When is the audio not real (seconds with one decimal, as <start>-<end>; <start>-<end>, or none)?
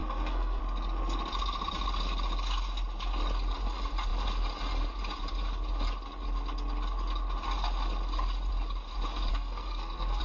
0.0-0.6; 9.3-10.2